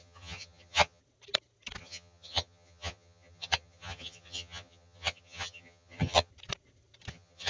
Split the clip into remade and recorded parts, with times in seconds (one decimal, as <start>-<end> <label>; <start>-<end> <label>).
0.0-1.0 remade; 1.0-1.8 recorded; 1.8-6.3 remade; 6.3-7.1 recorded; 7.1-7.5 remade